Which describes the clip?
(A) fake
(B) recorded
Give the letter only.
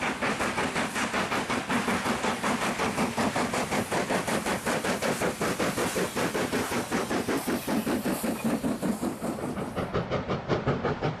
A